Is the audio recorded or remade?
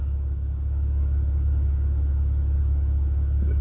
recorded